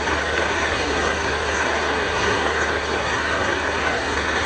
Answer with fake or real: fake